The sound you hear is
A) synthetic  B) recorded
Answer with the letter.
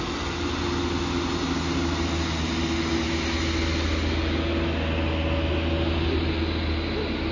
B